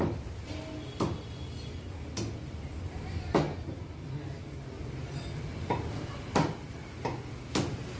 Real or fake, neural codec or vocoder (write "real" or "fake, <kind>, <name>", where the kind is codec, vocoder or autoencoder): real